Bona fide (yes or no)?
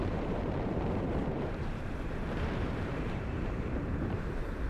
no